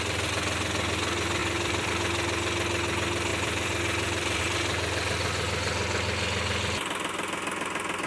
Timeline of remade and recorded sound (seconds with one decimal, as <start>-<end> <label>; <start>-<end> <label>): 0.0-1.4 recorded; 1.4-1.9 remade; 1.9-3.3 recorded; 3.3-4.4 remade; 4.4-8.1 recorded